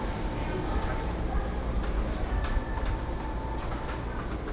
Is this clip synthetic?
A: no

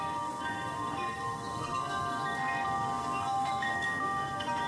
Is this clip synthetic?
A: yes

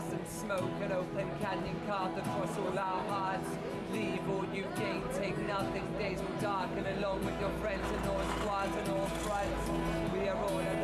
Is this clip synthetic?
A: no